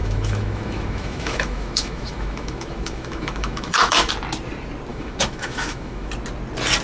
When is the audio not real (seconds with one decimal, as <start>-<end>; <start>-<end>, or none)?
0.0-4.1; 4.9-6.1